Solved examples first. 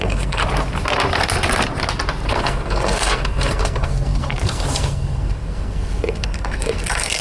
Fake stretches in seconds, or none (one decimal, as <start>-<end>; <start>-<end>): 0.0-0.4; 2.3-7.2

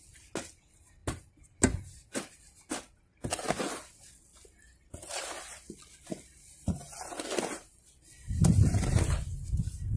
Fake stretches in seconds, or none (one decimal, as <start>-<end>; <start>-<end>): none

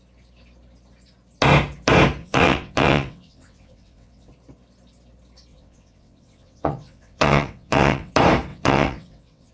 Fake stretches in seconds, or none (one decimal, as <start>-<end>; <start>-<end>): 2.2-4.3; 5.5-8.1; 8.5-9.5

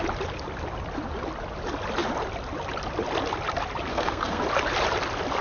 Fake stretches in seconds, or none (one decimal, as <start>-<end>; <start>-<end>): 3.9-4.4